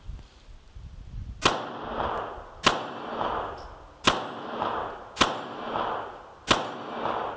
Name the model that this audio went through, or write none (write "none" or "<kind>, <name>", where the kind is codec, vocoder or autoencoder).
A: none